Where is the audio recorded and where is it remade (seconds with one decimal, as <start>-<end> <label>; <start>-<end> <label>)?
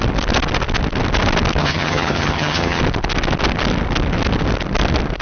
0.0-1.6 recorded; 1.6-2.8 remade; 2.8-5.2 recorded